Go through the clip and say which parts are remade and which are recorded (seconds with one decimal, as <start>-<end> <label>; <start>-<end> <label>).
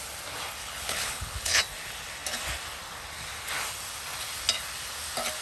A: 0.0-0.6 recorded; 0.6-1.6 remade; 1.6-5.4 recorded